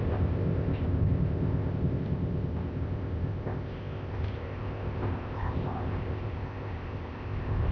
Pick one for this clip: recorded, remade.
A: remade